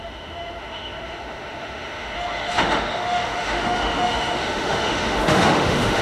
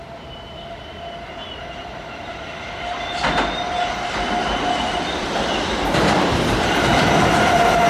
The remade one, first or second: first